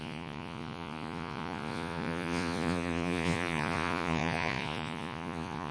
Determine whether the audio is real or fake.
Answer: fake